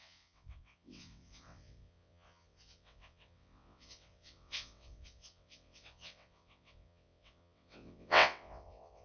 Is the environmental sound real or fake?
fake